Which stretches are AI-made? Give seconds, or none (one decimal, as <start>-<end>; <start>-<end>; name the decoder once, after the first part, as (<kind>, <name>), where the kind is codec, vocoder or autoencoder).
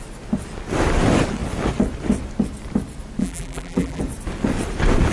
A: 3.2-4.0 (vocoder, BigVGAN v2)